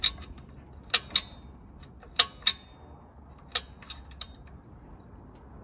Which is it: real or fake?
real